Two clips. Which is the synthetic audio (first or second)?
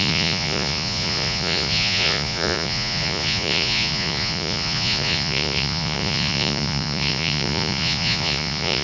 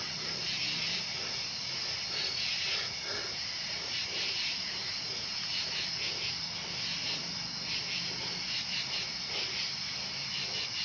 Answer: first